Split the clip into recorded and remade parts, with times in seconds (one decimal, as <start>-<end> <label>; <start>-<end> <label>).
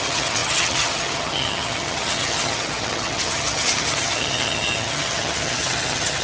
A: 0.0-6.2 remade